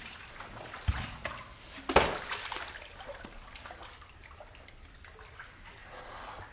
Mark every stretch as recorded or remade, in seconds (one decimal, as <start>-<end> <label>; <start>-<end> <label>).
0.0-6.5 recorded